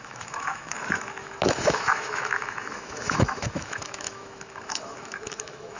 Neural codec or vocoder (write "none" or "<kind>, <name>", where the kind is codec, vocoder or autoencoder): autoencoder, DAC-VAE